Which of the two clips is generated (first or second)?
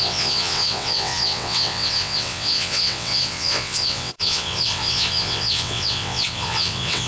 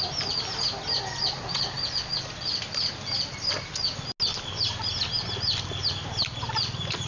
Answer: first